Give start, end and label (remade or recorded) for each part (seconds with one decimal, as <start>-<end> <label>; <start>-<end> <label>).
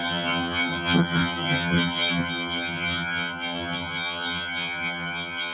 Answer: 0.0-5.5 remade